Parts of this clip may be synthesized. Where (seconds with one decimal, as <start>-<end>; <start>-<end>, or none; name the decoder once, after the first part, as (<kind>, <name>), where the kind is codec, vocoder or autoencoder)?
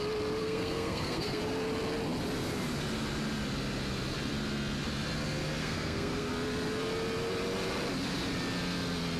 0.4-1.4 (codec, SNAC); 5.6-6.3